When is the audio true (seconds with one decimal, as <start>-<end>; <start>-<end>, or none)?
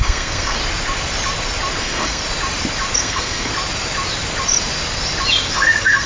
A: 0.6-1.8; 2.2-3.0; 3.5-5.5